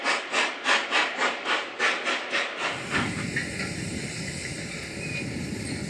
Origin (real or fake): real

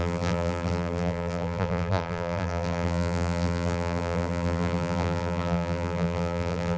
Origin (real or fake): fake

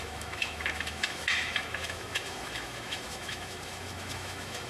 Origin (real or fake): fake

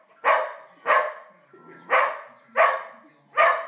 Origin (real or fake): real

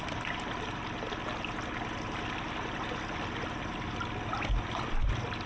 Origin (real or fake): real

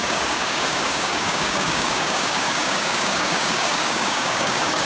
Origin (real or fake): fake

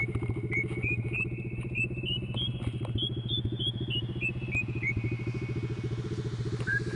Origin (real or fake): real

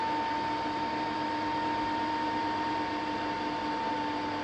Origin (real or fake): real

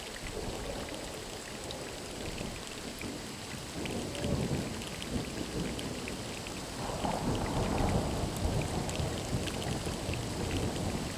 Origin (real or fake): real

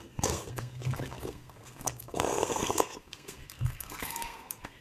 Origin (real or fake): fake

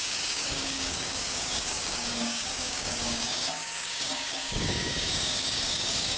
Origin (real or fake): fake